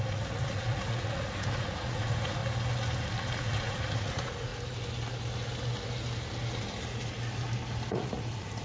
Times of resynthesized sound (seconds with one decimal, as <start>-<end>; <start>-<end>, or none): 0.0-2.4; 3.3-4.5; 7.9-8.6